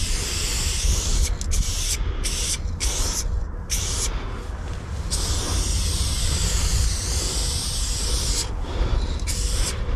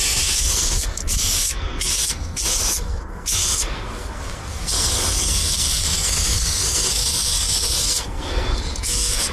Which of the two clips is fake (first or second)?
second